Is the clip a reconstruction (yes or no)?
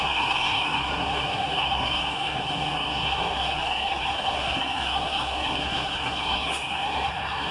yes